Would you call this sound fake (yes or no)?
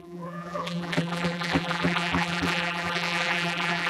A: yes